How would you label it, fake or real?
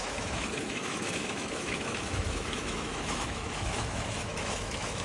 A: fake